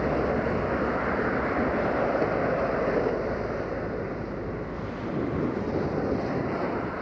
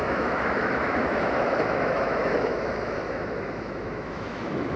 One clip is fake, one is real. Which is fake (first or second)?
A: second